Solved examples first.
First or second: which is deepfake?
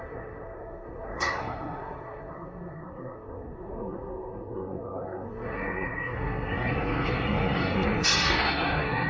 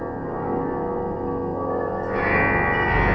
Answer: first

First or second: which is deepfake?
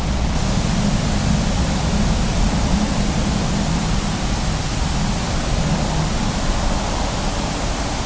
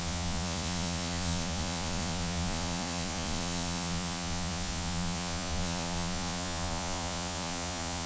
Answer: second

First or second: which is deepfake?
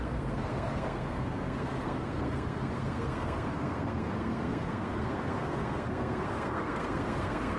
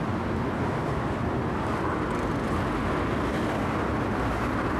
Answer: first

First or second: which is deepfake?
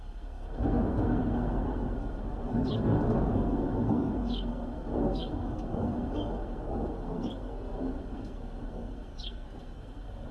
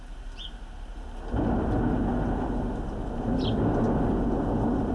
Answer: first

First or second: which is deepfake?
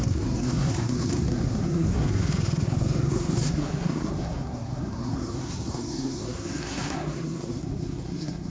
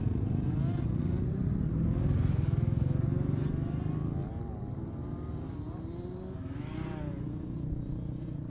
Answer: first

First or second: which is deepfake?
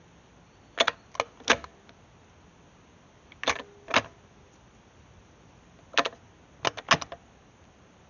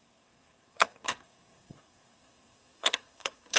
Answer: second